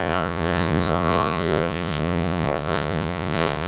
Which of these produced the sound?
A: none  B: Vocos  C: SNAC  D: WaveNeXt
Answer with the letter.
B